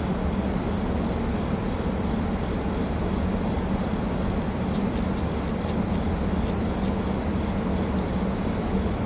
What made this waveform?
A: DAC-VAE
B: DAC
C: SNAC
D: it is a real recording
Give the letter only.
D